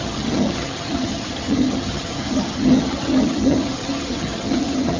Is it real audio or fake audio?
fake